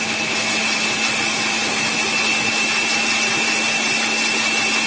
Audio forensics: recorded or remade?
recorded